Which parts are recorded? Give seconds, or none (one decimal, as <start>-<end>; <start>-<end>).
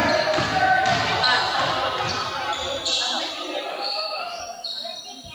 0.0-3.7; 4.4-5.3